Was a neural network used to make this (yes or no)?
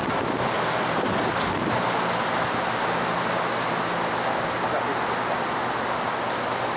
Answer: no